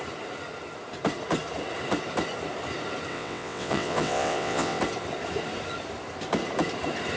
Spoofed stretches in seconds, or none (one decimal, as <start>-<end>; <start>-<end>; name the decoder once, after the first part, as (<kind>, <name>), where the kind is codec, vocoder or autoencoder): 3.1-4.8 (vocoder, WaveNeXt)